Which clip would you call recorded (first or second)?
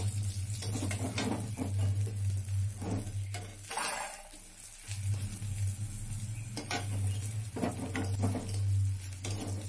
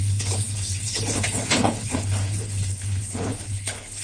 first